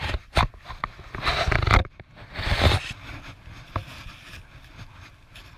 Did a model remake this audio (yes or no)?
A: no